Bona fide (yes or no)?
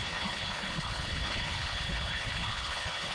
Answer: no